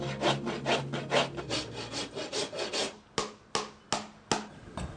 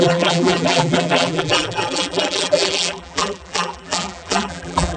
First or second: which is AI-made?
second